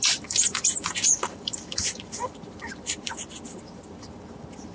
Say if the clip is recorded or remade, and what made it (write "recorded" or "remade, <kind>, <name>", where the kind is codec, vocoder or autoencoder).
remade, vocoder, BigVGAN v2